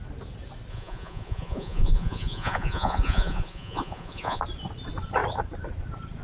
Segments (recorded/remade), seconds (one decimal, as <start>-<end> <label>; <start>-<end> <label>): 0.0-0.7 recorded; 0.7-4.4 remade; 4.4-6.2 recorded